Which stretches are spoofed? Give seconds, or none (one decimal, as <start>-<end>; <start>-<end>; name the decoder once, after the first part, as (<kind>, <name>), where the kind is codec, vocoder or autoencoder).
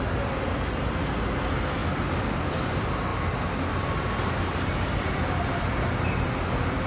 none